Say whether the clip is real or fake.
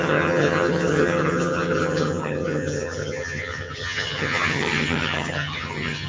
fake